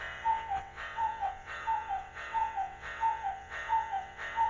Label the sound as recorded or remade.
remade